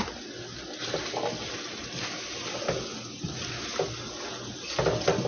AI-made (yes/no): no